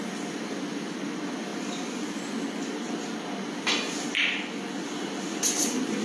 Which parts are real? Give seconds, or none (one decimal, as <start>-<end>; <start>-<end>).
0.0-6.0